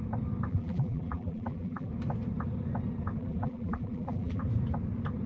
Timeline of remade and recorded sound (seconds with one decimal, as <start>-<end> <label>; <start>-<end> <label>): 0.0-0.5 recorded; 0.5-1.9 remade; 1.9-3.2 recorded; 3.2-4.4 remade; 4.4-5.3 recorded